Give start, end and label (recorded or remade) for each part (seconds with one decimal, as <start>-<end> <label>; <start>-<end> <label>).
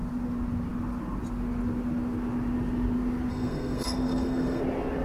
0.0-3.3 recorded; 3.3-4.6 remade; 4.6-5.0 recorded